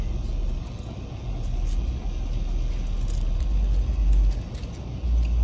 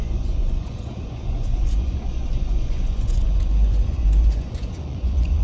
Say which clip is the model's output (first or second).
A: second